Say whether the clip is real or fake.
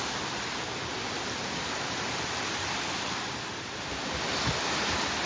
real